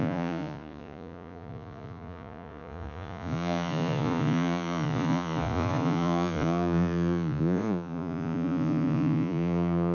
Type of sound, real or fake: fake